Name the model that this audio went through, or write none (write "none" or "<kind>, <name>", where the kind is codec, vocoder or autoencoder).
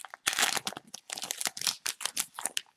none